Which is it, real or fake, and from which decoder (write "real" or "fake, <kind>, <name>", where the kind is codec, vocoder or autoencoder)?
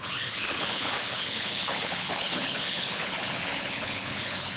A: fake, codec, HILCodec